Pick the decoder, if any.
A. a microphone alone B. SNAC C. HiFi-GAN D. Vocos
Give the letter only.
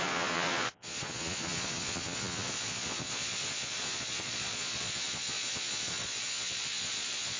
D